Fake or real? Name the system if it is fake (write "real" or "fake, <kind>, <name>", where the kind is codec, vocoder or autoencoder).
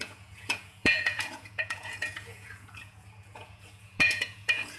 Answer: fake, vocoder, Vocos